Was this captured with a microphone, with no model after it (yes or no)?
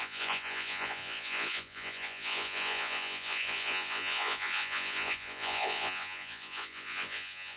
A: no